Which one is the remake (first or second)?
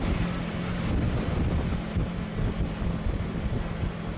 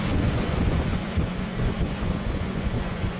second